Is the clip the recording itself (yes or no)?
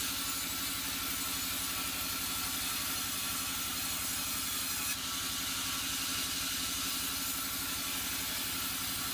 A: yes